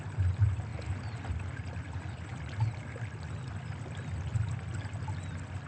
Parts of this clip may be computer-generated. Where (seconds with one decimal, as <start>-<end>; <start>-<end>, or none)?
none